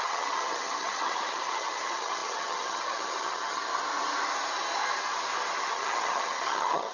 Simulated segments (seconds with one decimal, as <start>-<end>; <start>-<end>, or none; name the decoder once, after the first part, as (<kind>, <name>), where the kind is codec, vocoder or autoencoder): 0.0-3.7 (vocoder, HiFi-GAN); 5.6-6.9